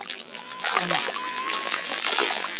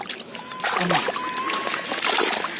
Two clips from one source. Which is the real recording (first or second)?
second